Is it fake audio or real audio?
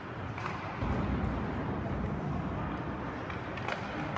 real